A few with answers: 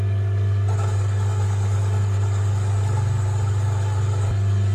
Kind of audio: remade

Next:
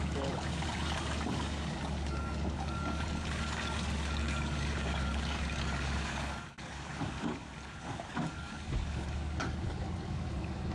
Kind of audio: remade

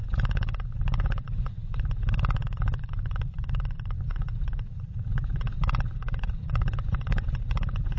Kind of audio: remade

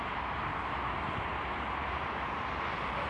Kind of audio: recorded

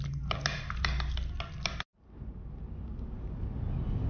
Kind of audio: recorded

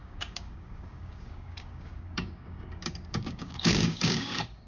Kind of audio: remade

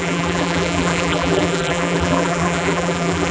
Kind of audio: remade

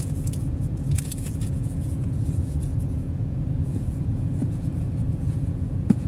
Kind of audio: remade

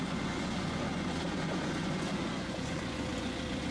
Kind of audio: remade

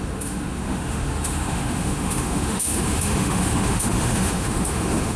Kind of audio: remade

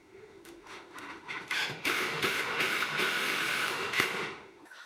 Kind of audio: remade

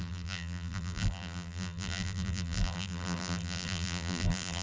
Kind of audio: remade